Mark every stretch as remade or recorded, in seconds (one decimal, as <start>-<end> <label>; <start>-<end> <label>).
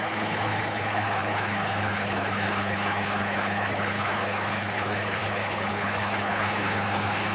0.0-7.3 remade